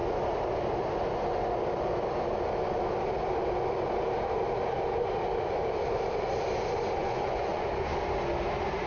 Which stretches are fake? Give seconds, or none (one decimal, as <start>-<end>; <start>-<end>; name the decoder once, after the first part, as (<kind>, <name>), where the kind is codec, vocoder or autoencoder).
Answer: 7.0-7.7 (vocoder, Vocos)